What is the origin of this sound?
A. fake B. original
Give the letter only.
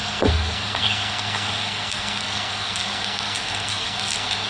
A